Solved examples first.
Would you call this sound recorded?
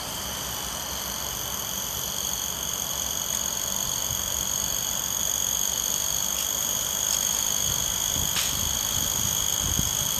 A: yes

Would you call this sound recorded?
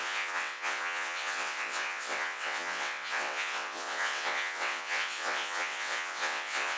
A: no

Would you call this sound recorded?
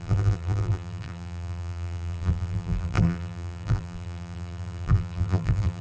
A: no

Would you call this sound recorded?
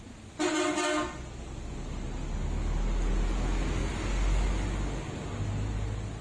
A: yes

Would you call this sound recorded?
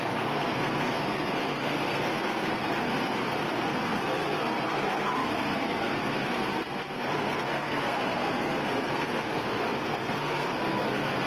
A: no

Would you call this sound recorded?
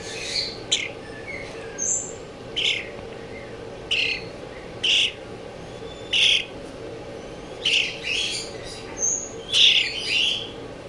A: yes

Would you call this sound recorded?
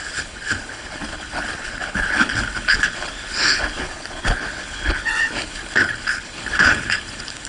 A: no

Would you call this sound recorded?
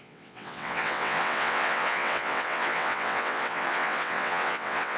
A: no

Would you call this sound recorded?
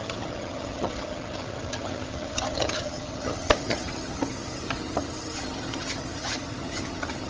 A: no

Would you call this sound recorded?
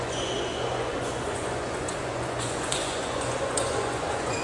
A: no